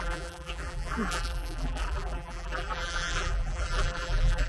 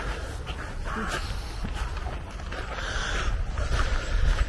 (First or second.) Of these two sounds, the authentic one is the second